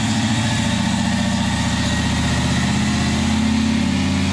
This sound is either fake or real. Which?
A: real